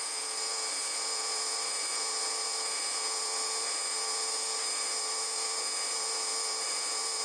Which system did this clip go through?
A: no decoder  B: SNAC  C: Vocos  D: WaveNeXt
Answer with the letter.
C